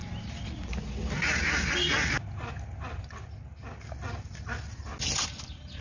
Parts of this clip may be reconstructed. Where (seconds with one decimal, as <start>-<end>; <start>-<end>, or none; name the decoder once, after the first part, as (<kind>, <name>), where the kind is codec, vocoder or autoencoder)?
none